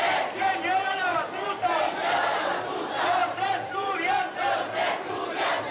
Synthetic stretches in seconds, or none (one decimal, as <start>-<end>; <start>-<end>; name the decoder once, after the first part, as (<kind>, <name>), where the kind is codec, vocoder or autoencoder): 3.2-4.9 (vocoder, BigVGAN v2)